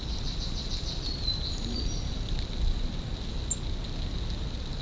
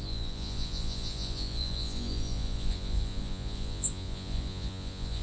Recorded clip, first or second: first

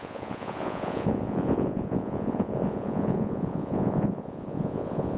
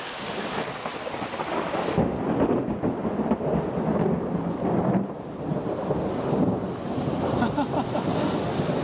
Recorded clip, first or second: second